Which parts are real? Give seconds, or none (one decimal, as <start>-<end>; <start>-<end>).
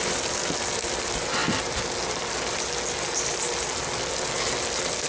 0.0-5.1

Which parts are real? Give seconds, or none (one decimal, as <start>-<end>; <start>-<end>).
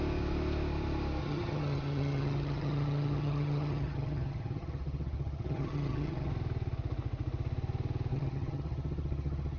0.0-1.2; 6.3-8.1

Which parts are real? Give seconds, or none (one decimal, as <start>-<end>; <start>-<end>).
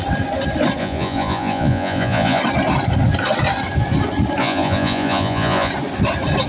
0.0-0.8; 2.4-4.4; 5.7-6.5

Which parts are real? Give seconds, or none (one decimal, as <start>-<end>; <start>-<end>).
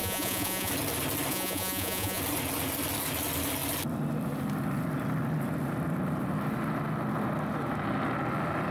0.7-1.3; 2.2-8.7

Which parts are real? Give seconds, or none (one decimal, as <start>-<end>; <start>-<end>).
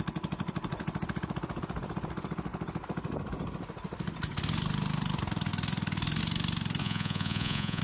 0.0-6.8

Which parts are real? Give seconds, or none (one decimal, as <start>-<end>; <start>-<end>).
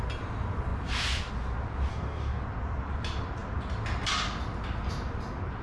0.0-1.9; 2.4-5.6